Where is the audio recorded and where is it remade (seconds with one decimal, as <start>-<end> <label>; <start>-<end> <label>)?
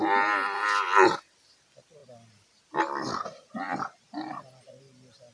0.0-5.3 recorded